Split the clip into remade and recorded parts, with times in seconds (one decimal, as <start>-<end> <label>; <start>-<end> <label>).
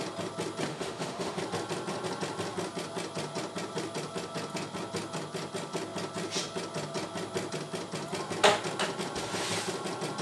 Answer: 0.0-0.7 recorded; 0.7-1.4 remade; 1.4-10.2 recorded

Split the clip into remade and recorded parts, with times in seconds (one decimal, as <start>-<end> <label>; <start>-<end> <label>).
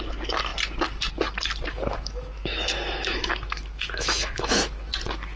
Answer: 0.0-1.7 recorded; 1.7-4.9 remade; 4.9-5.4 recorded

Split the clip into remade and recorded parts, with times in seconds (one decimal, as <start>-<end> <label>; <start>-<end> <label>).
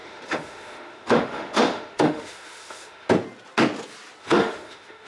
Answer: 0.0-3.1 remade; 3.1-4.2 recorded; 4.2-5.1 remade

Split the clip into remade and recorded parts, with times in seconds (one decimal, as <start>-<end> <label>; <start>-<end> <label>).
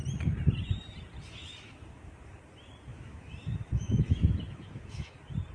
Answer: 0.0-1.4 recorded; 1.4-2.1 remade; 2.1-2.9 recorded; 2.9-5.1 remade; 5.1-5.5 recorded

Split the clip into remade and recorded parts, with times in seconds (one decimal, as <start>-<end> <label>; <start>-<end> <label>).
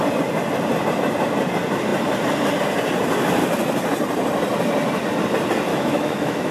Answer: 0.0-5.7 recorded; 5.7-6.5 remade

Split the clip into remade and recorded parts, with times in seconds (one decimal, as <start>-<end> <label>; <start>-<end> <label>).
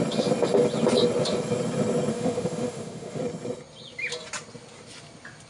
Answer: 0.0-2.1 recorded; 2.1-3.2 remade; 3.2-5.5 recorded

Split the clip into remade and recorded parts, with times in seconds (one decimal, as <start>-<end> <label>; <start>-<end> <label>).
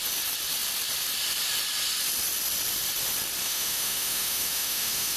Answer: 0.0-3.4 recorded; 3.4-5.2 remade